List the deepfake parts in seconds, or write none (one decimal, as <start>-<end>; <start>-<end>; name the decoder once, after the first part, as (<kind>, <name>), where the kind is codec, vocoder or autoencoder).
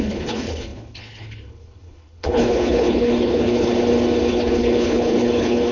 0.0-3.7 (codec, HILCodec); 4.3-5.7